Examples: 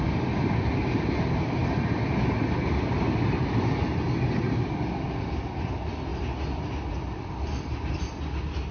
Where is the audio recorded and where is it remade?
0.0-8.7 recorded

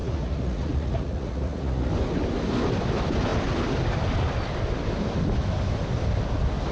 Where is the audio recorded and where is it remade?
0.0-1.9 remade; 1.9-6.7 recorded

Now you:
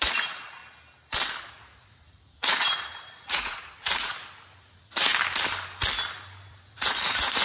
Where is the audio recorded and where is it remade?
0.0-0.6 remade; 0.6-1.4 recorded; 1.4-4.1 remade; 4.1-4.6 recorded; 4.6-5.1 remade; 5.1-6.5 recorded; 6.5-7.4 remade

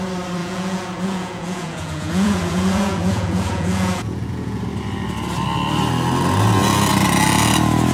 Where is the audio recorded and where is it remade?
0.0-0.4 recorded; 0.4-4.6 remade; 4.6-7.9 recorded

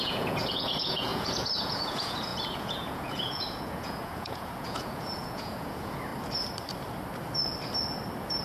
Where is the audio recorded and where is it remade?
0.0-6.1 remade; 6.1-8.4 recorded

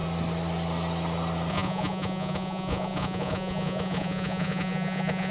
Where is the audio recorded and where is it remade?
0.0-1.5 recorded; 1.5-5.3 remade

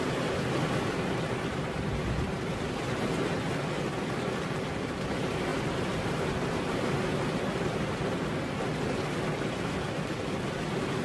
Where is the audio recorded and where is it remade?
0.0-11.0 recorded

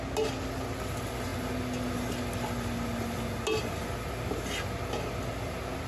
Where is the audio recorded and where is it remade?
0.0-5.9 recorded